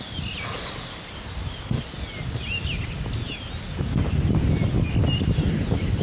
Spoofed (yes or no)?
no